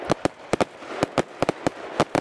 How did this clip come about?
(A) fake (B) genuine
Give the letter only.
B